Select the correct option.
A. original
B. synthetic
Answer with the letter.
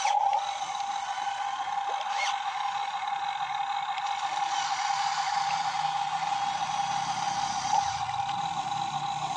A